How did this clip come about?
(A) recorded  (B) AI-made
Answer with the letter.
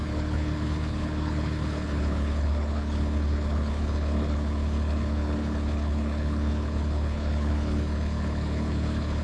B